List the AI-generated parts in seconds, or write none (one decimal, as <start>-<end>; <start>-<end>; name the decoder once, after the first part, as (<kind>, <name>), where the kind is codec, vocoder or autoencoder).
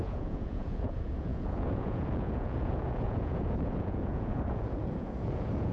0.0-5.7 (vocoder, Vocos)